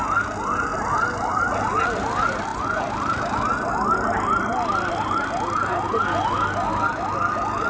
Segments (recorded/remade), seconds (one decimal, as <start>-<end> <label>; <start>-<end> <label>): 0.0-7.7 recorded